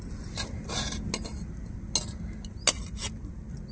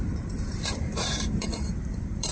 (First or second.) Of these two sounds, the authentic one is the first